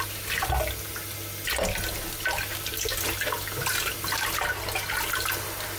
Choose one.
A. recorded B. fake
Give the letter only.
A